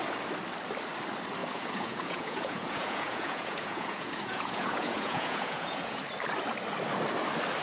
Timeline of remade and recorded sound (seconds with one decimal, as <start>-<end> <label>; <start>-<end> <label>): 0.0-1.4 recorded; 1.4-6.0 remade; 6.0-7.6 recorded